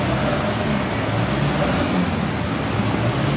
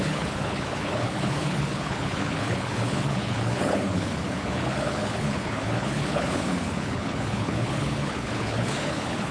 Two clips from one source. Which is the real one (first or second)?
first